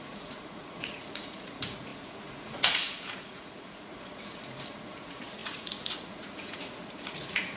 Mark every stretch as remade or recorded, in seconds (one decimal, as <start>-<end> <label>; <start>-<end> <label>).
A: 0.0-7.6 remade